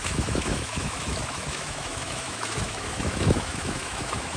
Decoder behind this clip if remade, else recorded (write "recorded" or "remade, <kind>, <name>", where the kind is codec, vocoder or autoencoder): remade, autoencoder, DAC-VAE